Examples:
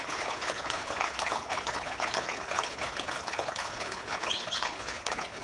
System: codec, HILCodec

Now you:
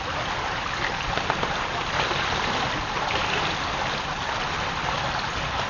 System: none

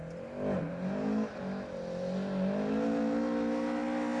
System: none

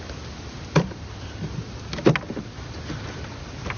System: none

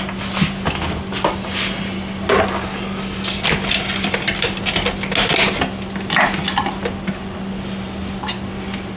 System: none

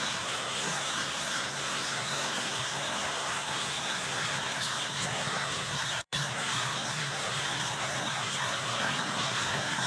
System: codec, SNAC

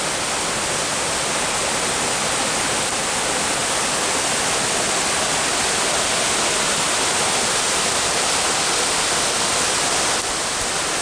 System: none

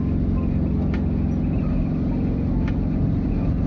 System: none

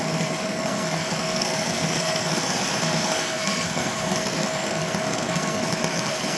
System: codec, SNAC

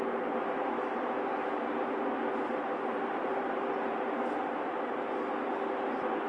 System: none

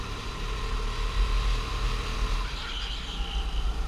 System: none